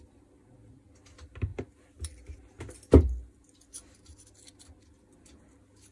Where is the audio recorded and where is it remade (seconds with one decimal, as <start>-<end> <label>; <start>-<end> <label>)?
0.0-5.9 recorded